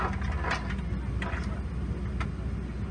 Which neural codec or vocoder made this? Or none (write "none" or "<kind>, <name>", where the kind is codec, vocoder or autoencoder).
none